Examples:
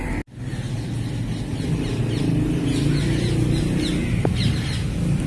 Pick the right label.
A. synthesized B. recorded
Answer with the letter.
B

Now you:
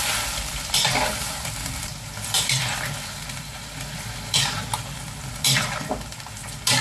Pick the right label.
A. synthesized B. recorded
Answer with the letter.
A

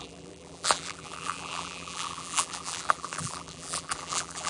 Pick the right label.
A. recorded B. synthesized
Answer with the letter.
B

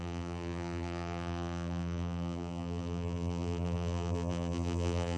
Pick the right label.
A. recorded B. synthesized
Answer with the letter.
B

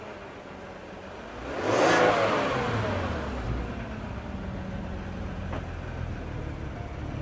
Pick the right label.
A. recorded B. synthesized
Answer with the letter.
A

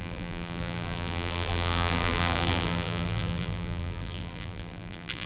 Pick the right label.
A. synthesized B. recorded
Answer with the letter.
A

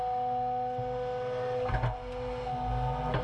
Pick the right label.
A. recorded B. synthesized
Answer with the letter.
A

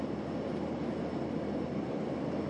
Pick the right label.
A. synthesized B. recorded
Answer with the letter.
A